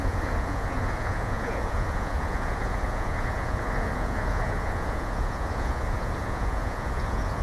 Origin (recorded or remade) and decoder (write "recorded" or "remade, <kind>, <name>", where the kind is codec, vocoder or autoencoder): remade, vocoder, Vocos